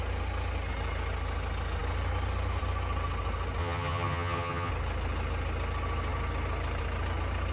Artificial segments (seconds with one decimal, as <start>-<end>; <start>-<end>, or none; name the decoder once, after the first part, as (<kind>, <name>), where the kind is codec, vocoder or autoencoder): 3.6-4.7 (vocoder, HiFi-GAN)